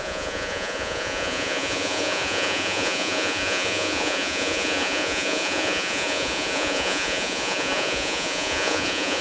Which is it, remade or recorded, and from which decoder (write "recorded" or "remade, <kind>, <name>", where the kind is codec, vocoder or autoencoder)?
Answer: remade, vocoder, Vocos